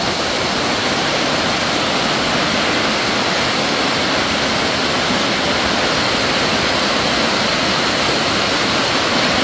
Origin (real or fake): real